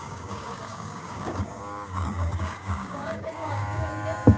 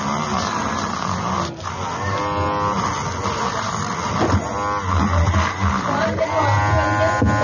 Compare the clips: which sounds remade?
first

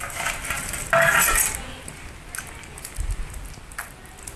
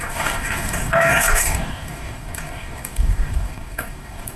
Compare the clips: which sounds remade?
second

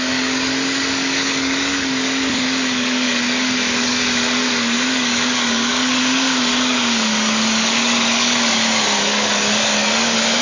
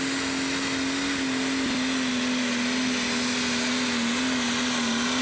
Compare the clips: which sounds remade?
first